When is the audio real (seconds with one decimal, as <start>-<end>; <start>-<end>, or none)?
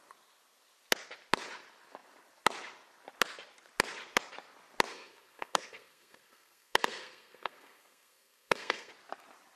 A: 0.0-4.9; 8.9-9.6